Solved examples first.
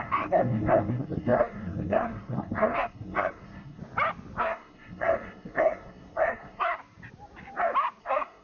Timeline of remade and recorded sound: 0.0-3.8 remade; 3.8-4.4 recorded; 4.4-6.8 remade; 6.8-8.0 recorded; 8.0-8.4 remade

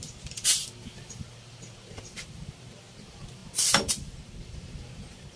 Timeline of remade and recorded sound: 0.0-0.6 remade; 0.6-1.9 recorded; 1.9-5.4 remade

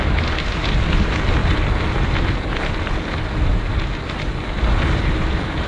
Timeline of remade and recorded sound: 0.0-5.7 recorded

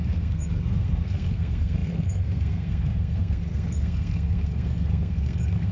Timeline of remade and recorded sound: 0.0-5.7 remade

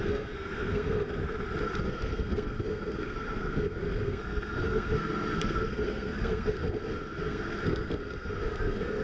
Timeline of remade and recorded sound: 0.0-1.2 remade; 1.2-1.8 recorded; 1.8-9.0 remade

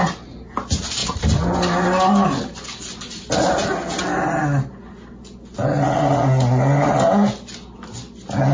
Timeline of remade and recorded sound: 0.0-8.5 recorded

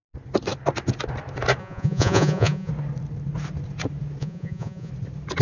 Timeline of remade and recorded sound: 0.0-1.6 recorded; 1.6-2.7 remade; 2.7-4.2 recorded; 4.2-4.9 remade; 4.9-5.4 recorded